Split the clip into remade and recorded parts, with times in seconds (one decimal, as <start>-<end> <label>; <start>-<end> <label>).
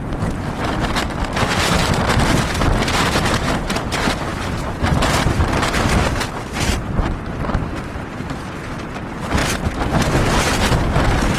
0.0-11.4 recorded